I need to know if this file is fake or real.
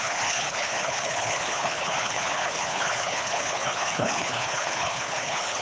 fake